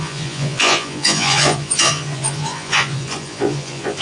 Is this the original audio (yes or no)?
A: no